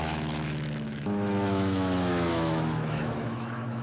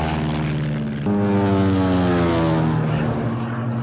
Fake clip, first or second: first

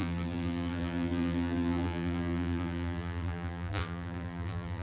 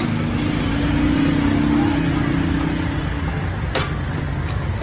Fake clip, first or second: first